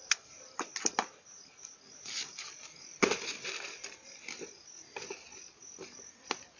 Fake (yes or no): no